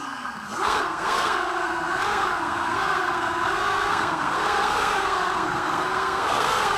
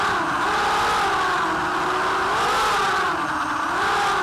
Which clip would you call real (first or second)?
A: second